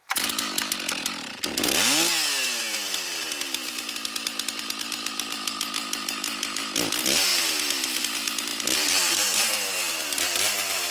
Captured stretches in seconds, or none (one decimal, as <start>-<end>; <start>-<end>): 0.0-10.9